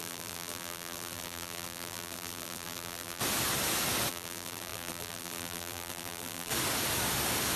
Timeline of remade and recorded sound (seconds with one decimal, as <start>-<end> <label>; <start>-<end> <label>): 0.0-3.2 remade; 3.2-4.1 recorded; 4.1-6.5 remade; 6.5-7.6 recorded

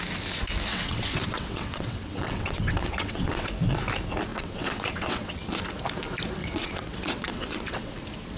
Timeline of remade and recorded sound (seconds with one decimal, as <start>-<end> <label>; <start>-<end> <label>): 0.0-0.7 recorded; 0.7-3.5 remade; 3.5-4.3 recorded; 4.3-5.4 remade; 5.4-6.4 recorded; 6.4-7.9 remade; 7.9-8.4 recorded

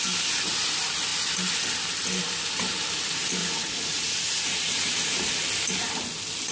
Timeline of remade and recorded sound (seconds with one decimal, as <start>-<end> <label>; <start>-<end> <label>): 0.0-3.4 recorded; 3.4-5.3 remade; 5.3-6.5 recorded